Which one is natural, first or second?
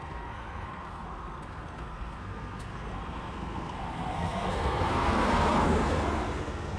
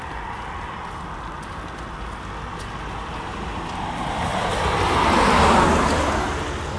second